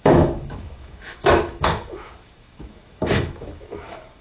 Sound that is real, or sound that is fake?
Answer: fake